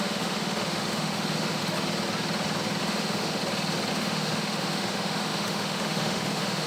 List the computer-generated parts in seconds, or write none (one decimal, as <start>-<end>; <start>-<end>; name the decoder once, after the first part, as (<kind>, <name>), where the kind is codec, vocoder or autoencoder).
0.0-1.6 (autoencoder, DAC-VAE); 2.8-3.4; 3.9-6.7